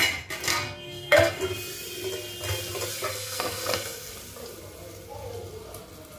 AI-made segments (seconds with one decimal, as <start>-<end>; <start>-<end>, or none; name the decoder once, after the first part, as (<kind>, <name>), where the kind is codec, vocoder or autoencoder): 0.5-1.4 (codec, SNAC); 3.1-4.1